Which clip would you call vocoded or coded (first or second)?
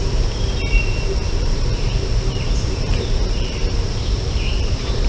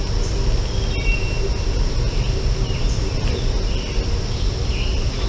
first